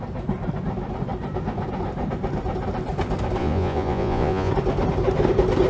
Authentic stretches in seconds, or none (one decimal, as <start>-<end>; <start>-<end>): 0.0-3.4; 4.5-5.7